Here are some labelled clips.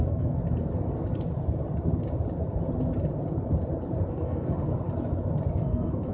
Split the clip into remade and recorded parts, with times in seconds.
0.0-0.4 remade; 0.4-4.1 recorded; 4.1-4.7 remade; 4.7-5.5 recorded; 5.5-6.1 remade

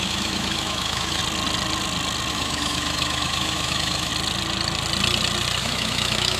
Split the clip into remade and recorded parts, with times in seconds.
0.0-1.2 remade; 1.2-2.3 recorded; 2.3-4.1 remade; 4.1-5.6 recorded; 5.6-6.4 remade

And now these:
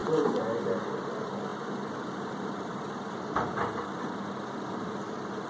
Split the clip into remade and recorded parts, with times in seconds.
0.0-1.0 recorded; 1.0-5.5 remade

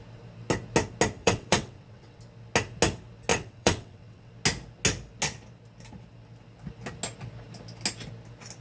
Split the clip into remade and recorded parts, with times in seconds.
0.0-1.2 recorded; 1.2-2.2 remade; 2.2-3.3 recorded; 3.3-4.3 remade; 4.3-8.6 recorded